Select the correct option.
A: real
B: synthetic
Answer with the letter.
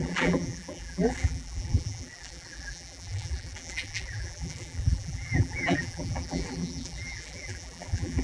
B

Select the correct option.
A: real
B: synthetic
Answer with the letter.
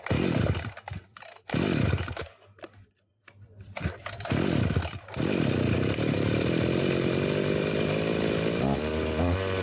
B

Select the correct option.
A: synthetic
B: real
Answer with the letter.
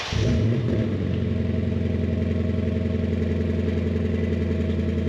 B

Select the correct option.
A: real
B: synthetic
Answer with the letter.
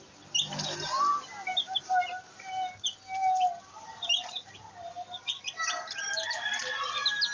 A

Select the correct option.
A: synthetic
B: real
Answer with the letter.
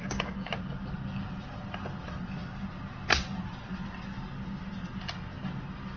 B